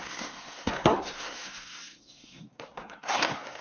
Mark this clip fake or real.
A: fake